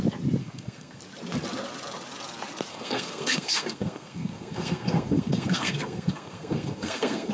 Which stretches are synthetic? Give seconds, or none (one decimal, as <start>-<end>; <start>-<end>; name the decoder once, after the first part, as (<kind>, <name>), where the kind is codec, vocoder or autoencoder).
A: 0.4-1.0 (codec, SNAC); 2.7-7.3